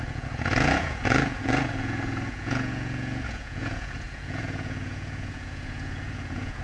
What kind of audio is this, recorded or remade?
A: remade